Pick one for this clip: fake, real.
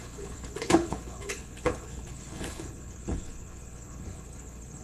fake